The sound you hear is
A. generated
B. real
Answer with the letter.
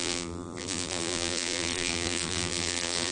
A